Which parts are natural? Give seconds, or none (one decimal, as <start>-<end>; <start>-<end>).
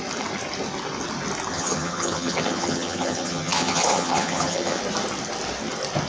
0.0-1.5; 4.8-6.1